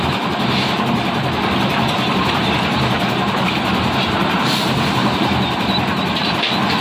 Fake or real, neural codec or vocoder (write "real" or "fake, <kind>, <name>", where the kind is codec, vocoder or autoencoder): fake, vocoder, BigVGAN v2